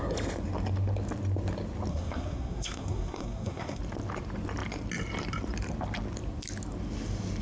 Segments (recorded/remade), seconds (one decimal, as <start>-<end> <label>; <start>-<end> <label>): 0.0-1.9 recorded; 1.9-3.8 remade; 3.8-7.4 recorded